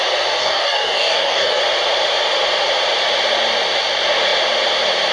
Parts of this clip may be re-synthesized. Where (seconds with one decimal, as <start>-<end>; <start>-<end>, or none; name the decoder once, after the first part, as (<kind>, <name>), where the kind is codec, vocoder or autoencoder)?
0.4-1.6 (codec, DAC)